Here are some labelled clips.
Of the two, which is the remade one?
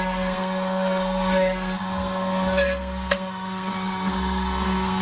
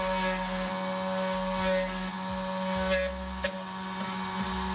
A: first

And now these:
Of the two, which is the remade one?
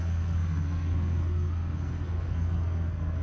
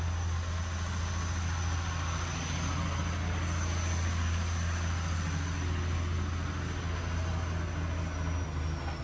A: first